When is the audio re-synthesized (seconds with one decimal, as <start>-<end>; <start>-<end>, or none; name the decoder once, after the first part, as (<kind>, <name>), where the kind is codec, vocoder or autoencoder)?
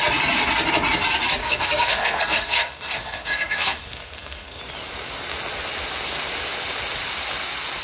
1.4-4.6 (codec, SNAC)